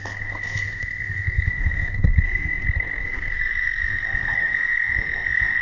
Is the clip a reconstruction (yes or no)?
yes